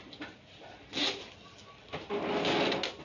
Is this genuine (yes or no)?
yes